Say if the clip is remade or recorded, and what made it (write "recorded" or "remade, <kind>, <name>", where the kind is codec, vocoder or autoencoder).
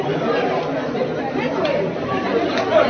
recorded